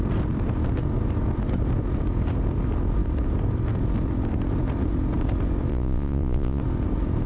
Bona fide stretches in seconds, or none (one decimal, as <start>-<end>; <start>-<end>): 0.0-5.7; 6.6-7.3